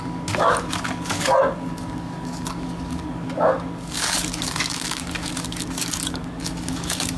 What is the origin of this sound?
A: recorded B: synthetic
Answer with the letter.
B